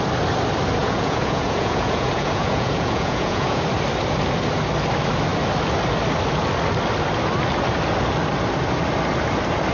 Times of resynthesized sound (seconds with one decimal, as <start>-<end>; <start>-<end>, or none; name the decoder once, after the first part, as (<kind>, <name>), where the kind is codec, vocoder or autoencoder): 0.8-3.6 (vocoder, Vocos)